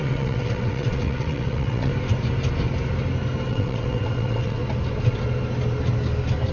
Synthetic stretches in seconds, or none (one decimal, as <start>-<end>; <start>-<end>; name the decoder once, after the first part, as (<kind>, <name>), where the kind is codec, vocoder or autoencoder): 0.0-1.9 (vocoder, WaveNeXt); 3.5-4.6